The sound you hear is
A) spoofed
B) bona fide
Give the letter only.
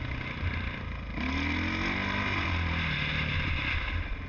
B